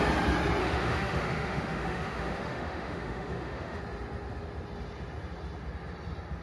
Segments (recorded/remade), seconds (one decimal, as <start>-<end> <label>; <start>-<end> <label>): 0.0-0.6 recorded; 0.6-3.8 remade; 3.8-6.4 recorded